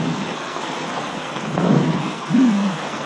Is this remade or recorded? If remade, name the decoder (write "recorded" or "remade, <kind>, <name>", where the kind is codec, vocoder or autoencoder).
remade, codec, SNAC